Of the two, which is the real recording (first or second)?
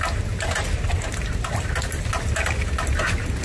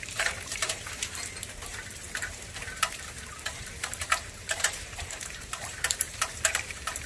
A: first